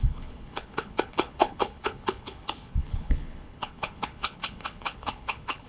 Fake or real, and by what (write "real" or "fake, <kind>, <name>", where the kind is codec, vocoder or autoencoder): fake, codec, HILCodec